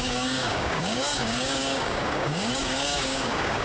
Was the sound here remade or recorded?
remade